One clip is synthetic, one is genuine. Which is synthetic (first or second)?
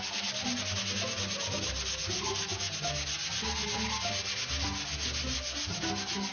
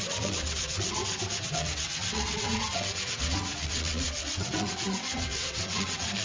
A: second